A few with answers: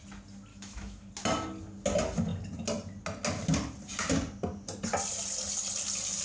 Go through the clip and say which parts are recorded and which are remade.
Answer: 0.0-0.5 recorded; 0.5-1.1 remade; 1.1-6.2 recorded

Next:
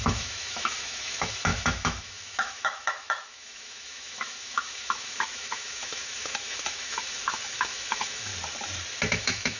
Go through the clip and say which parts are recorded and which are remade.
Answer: 0.0-8.3 remade; 8.3-9.1 recorded; 9.1-9.6 remade

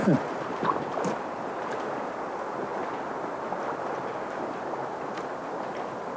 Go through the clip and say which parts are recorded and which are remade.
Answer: 0.0-6.2 recorded

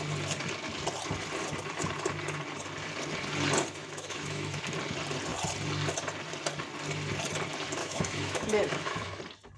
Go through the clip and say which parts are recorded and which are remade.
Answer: 0.0-3.8 recorded; 3.8-4.6 remade; 4.6-7.8 recorded; 7.8-9.2 remade; 9.2-9.6 recorded